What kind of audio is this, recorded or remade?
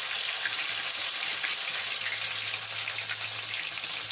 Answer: recorded